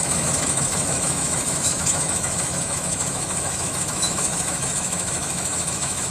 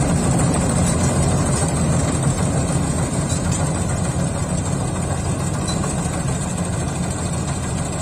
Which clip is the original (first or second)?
second